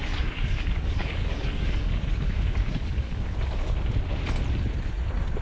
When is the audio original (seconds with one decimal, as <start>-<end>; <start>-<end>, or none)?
3.2-5.4